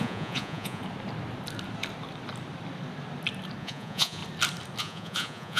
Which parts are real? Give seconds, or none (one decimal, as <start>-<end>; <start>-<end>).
0.8-3.6; 4.2-4.8